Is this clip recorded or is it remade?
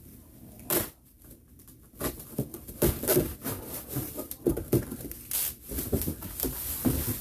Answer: recorded